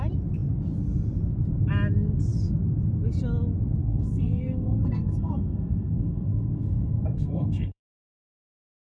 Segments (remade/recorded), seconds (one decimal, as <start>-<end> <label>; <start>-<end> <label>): 0.0-3.8 recorded; 3.8-9.0 remade